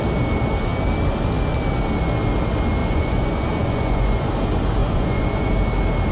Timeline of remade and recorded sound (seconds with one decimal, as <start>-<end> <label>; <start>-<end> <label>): 0.0-2.8 recorded; 2.8-4.3 remade; 4.3-4.8 recorded; 4.8-5.5 remade; 5.5-6.1 recorded